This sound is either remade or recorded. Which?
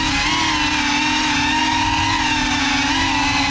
recorded